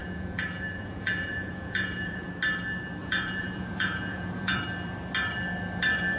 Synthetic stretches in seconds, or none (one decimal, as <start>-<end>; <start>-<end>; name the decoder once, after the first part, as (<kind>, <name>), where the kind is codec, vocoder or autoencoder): 0.0-2.3 (vocoder, Vocos); 3.0-4.6